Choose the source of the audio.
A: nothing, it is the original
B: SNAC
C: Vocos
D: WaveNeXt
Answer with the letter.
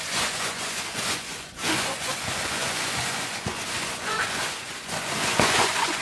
C